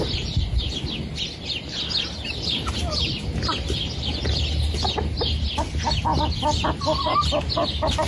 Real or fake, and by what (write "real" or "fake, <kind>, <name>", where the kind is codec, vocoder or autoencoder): real